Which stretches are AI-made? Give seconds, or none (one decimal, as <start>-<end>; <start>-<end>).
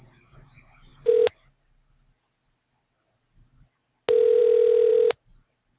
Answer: 4.9-5.8